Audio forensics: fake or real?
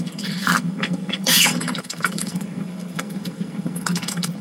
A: fake